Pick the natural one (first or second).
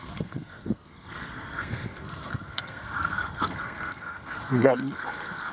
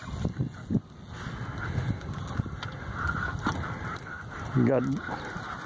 second